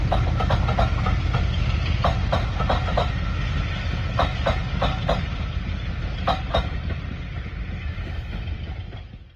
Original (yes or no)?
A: yes